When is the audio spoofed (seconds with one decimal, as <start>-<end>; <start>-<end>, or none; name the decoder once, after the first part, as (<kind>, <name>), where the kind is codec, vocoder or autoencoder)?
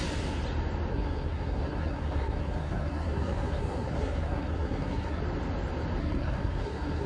0.9-5.2 (codec, SNAC); 6.0-7.1